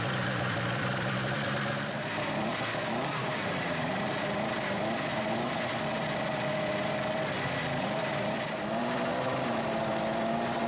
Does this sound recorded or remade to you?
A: remade